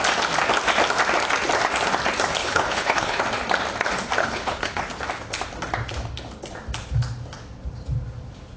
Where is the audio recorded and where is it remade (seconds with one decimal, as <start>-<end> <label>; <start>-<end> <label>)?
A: 0.0-2.4 recorded; 2.4-3.2 remade; 3.2-4.2 recorded; 4.2-4.8 remade; 4.8-8.6 recorded